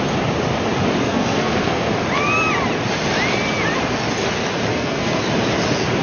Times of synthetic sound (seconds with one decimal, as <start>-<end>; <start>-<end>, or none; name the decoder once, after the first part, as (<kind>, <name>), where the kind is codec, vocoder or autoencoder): 1.0-1.9 (codec, SNAC); 4.7-5.2